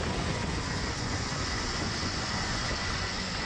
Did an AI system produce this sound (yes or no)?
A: yes